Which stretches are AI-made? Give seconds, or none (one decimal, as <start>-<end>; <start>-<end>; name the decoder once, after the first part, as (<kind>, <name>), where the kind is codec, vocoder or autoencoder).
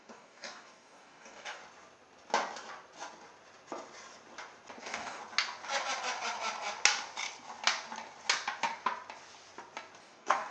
0.0-1.6 (codec, DAC); 4.8-5.2; 10.0-10.5